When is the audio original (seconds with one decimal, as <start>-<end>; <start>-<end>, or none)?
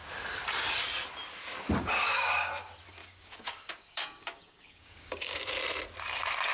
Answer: 0.0-1.8; 2.5-3.0; 5.4-6.5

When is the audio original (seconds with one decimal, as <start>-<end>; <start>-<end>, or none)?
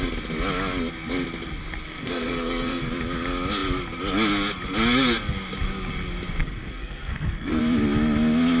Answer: 0.0-1.8; 2.8-6.4; 7.6-8.6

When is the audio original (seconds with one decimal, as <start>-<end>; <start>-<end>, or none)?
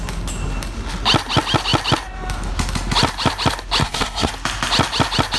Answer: 0.0-3.8; 4.3-5.4